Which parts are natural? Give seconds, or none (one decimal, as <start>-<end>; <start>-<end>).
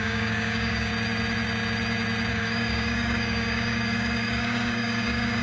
0.9-2.3